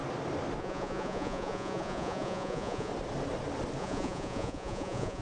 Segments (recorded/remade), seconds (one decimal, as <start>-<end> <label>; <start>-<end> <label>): 0.0-0.6 recorded; 0.6-2.9 remade; 2.9-3.8 recorded; 3.8-5.2 remade